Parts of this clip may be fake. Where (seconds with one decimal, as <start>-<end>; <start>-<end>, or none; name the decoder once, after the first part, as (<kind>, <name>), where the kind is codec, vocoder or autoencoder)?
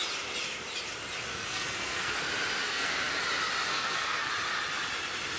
1.3-2.2 (codec, SNAC); 2.6-3.2; 3.7-4.3